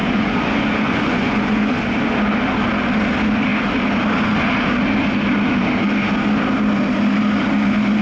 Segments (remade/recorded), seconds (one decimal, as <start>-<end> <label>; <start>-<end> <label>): 0.0-1.7 remade; 1.7-8.0 recorded